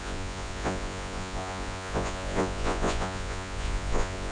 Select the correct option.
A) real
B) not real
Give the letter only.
B